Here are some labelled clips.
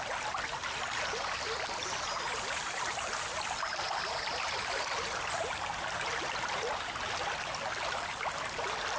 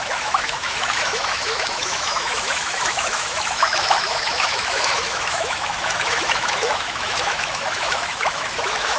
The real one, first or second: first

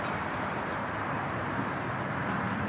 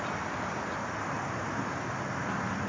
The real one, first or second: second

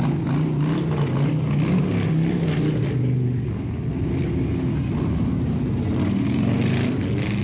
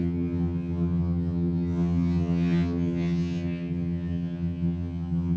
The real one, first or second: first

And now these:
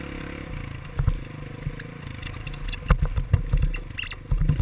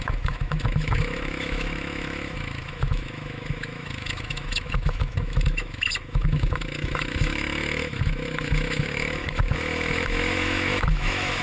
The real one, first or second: first